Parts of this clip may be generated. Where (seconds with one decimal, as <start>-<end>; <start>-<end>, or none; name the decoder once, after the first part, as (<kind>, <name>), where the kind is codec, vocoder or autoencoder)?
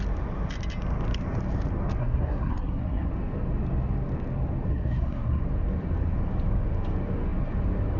2.0-3.1 (codec, SNAC); 4.7-5.4